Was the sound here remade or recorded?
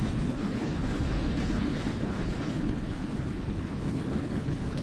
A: remade